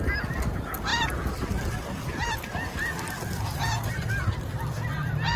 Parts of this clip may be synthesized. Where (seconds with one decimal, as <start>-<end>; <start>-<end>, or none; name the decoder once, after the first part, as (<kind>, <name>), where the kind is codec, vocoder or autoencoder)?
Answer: none